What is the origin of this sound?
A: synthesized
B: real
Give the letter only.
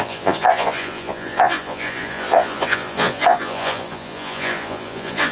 A